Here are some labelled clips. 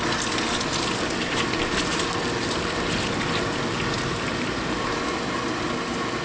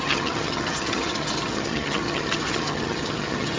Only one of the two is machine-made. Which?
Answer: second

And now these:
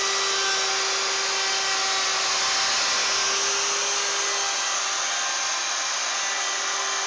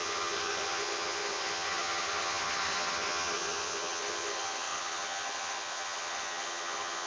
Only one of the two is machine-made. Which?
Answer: second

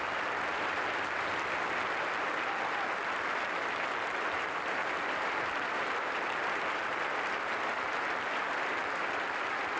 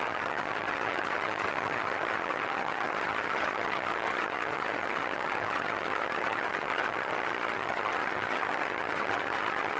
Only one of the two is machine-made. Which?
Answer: second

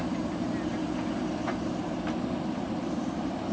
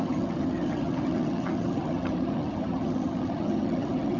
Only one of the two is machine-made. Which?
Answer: second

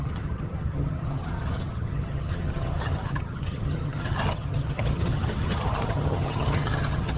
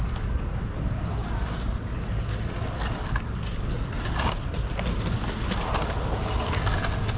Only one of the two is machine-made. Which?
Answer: first